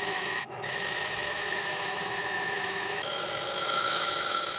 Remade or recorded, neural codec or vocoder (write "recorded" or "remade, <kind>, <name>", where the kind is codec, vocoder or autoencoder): remade, autoencoder, DAC-VAE